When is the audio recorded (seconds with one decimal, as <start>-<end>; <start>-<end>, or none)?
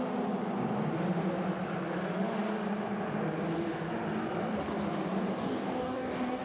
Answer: 0.0-5.3